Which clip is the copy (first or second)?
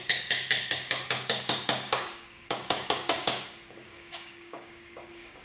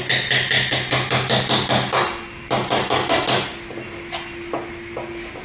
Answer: first